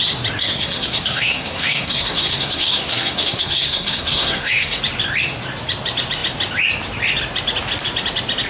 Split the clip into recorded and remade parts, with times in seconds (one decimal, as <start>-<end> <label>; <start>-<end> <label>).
0.0-0.4 recorded; 0.4-4.8 remade; 4.8-8.5 recorded